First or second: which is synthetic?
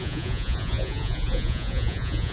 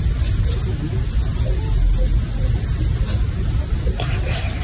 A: first